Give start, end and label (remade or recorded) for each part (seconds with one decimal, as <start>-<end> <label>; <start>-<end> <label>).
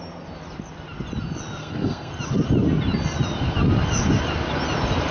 0.0-1.6 recorded; 1.6-2.1 remade; 2.1-5.1 recorded